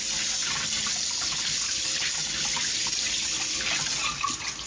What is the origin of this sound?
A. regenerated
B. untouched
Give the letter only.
B